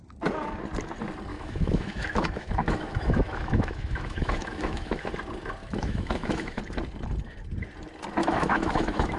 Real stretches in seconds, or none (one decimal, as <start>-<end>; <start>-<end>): 0.0-1.3; 5.1-5.6; 6.6-8.2